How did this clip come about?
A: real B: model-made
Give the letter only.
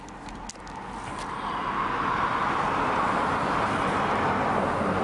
A